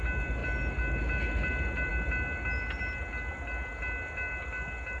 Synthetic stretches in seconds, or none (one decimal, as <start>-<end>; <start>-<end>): none